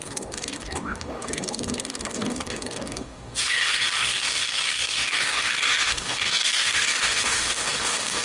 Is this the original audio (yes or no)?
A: no